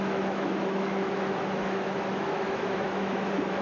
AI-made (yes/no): yes